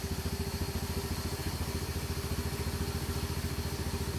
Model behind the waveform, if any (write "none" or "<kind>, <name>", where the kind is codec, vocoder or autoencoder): none